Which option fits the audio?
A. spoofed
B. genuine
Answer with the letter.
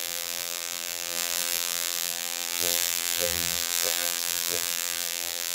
A